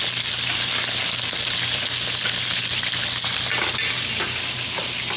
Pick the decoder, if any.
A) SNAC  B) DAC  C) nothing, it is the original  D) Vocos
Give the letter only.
C